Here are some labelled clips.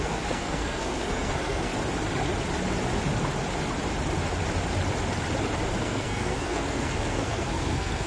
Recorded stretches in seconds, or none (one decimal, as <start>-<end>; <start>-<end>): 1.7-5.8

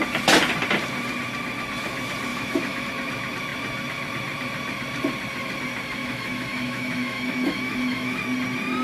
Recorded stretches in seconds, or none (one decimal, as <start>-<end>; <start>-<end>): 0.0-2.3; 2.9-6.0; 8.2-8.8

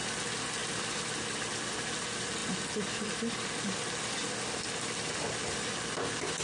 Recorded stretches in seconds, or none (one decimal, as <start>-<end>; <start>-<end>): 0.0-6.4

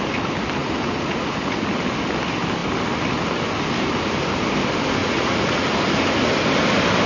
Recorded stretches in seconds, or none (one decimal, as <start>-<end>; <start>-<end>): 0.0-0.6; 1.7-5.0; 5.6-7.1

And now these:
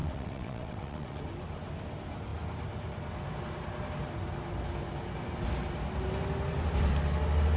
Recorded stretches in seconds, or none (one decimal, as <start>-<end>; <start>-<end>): 1.2-7.6

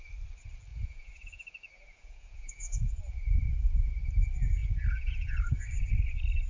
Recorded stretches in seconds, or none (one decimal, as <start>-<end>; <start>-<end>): 0.0-0.7; 3.0-4.6; 5.6-6.5

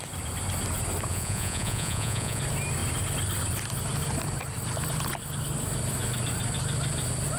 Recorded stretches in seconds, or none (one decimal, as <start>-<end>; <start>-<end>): 0.0-1.1; 2.4-7.4